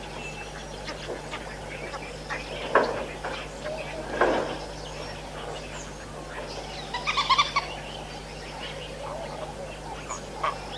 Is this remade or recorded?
recorded